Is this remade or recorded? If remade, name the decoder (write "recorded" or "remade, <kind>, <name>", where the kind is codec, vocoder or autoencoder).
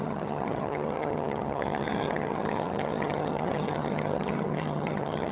remade, vocoder, HiFi-GAN